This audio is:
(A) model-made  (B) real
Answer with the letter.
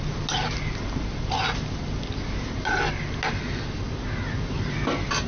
B